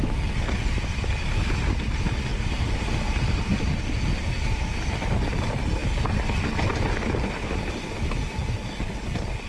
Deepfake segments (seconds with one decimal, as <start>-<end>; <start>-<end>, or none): 2.3-3.6